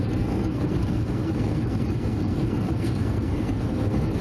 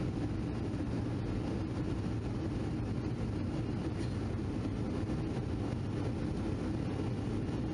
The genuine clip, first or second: second